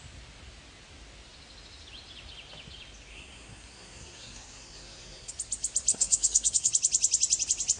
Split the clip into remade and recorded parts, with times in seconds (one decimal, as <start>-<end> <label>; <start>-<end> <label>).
0.0-3.1 recorded; 3.1-5.3 remade; 5.3-5.9 recorded; 5.9-6.7 remade; 6.7-7.8 recorded